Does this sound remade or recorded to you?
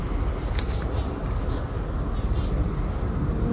recorded